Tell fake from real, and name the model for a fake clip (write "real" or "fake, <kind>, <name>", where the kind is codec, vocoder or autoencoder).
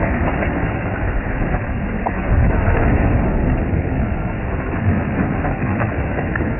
fake, codec, SNAC